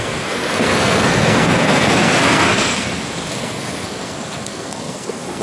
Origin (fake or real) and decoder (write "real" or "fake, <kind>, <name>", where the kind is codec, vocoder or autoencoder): fake, codec, SNAC